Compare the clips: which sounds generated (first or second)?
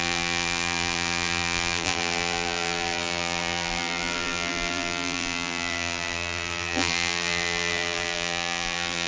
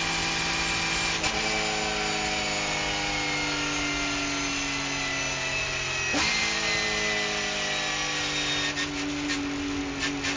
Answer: first